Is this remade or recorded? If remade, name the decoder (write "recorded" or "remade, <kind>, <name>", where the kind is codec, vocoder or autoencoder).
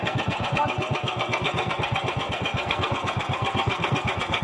remade, codec, SNAC